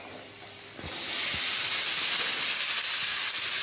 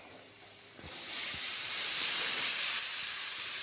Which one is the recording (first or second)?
first